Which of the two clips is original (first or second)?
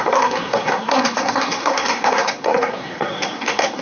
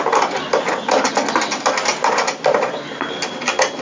second